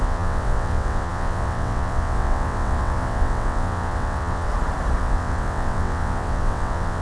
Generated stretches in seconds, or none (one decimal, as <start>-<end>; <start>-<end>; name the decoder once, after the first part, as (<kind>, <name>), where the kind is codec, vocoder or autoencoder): 0.0-4.5 (vocoder, WaveNeXt); 5.0-7.0